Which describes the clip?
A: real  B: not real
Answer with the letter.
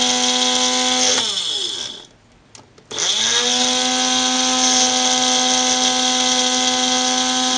A